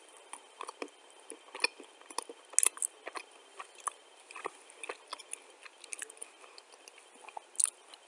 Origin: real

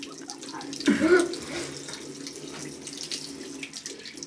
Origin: real